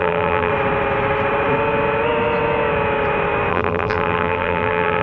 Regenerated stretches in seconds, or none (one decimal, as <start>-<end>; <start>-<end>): 0.0-0.5; 3.5-5.0